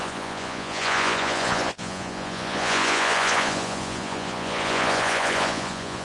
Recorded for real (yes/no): no